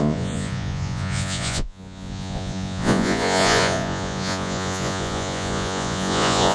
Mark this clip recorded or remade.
remade